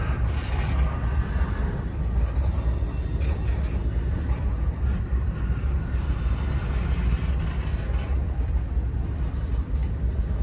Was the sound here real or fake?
real